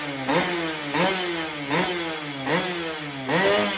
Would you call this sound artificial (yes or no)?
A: no